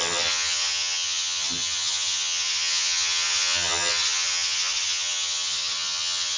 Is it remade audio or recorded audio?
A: remade